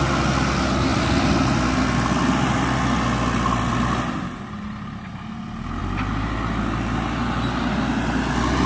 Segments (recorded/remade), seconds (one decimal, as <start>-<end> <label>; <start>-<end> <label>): 0.0-8.7 recorded